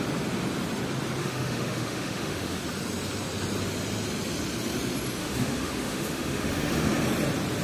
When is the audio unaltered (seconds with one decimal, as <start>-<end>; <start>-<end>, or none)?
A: 0.0-1.2; 2.6-5.2; 6.9-7.6